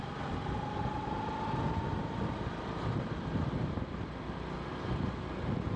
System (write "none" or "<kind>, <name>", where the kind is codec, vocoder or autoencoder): none